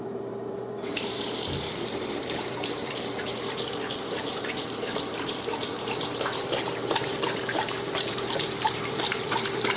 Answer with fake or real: fake